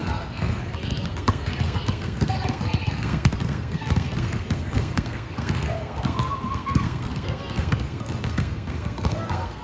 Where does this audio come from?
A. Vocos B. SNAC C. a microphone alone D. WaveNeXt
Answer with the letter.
B